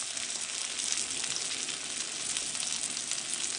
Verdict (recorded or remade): recorded